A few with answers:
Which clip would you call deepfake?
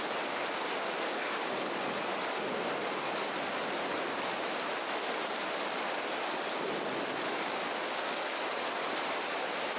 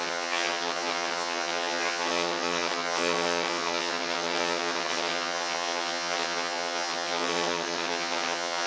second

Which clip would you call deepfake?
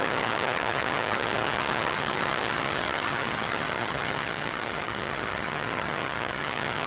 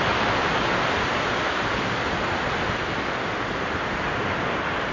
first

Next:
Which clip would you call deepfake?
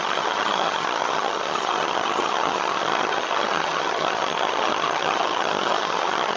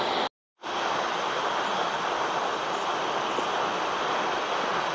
first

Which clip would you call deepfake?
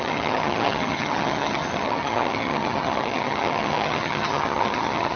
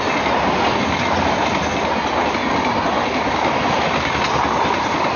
first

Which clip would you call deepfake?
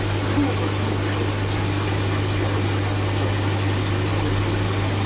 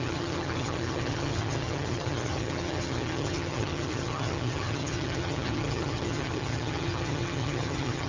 second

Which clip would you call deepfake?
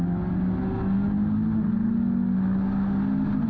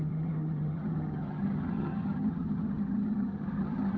second